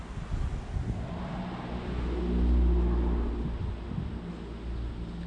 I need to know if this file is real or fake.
real